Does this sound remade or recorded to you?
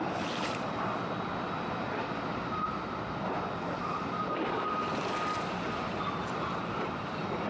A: remade